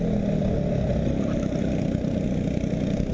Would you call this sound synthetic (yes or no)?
no